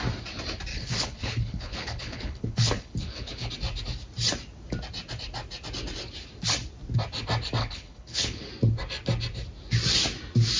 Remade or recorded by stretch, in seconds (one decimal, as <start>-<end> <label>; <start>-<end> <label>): 0.0-0.7 recorded; 0.7-3.5 remade; 3.5-7.6 recorded; 7.6-8.5 remade; 8.5-10.6 recorded